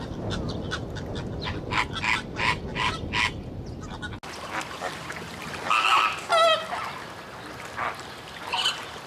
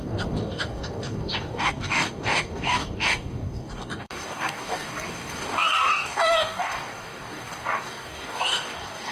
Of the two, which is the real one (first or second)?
first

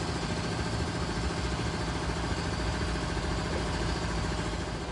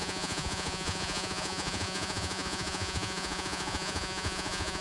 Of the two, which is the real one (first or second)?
first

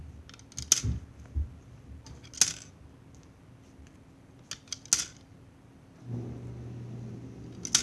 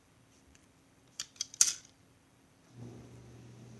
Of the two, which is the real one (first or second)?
first